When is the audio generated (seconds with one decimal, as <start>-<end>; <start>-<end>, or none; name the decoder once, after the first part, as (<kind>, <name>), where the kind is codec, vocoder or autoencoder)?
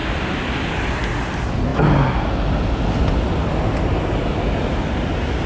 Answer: 0.0-0.9 (vocoder, BigVGAN v2)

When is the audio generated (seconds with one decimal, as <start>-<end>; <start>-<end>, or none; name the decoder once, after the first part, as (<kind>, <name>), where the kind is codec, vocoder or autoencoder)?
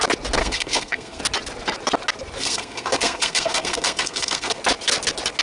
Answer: 0.4-1.2 (codec, SNAC); 2.4-4.6